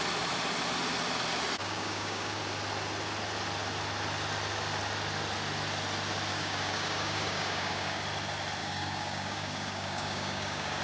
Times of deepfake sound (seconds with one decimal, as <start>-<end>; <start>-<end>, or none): 1.6-2.4; 6.3-8.0; 8.6-10.8